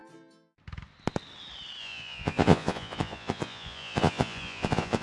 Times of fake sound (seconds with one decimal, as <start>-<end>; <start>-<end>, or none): 1.8-5.0